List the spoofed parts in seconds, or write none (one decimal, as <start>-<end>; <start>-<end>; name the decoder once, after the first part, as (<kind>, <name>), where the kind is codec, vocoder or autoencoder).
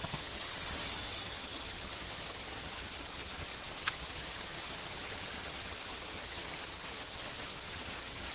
0.0-8.3 (vocoder, HiFi-GAN)